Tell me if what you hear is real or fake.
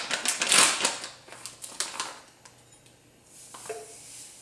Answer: real